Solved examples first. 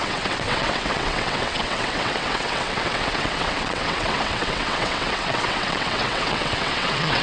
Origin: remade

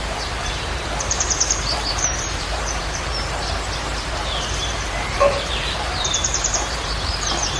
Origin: remade